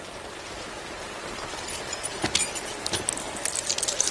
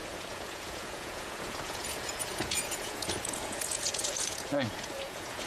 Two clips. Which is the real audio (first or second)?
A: first